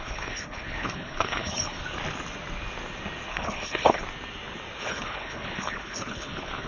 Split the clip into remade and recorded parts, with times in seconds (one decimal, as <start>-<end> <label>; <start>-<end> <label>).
0.0-1.8 remade; 1.8-3.3 recorded; 3.3-4.0 remade; 4.0-4.8 recorded; 4.8-6.7 remade